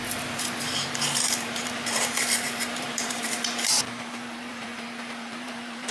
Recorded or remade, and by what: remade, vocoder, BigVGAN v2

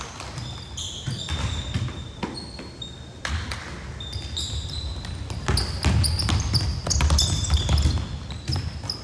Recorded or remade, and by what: recorded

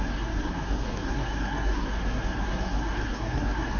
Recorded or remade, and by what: remade, codec, SNAC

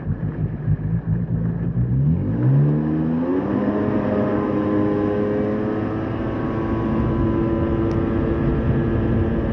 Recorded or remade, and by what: recorded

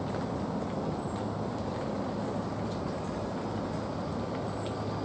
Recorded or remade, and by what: recorded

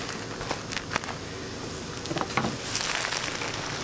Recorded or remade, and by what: recorded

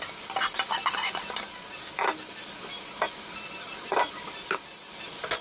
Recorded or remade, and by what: recorded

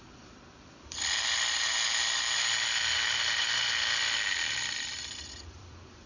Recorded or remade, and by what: remade, vocoder, BigVGAN v2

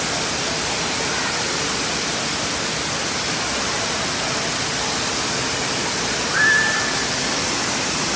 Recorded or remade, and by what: recorded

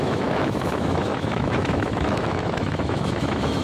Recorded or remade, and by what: remade, autoencoder, DAC-VAE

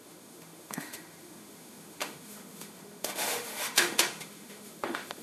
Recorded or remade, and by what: remade, autoencoder, DAC-VAE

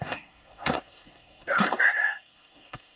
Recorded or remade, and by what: remade, codec, SNAC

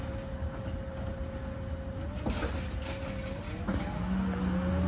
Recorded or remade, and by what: recorded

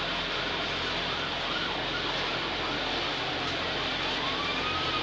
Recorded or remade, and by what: recorded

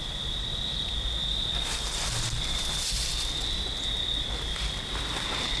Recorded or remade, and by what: recorded